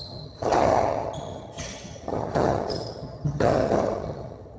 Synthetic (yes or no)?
yes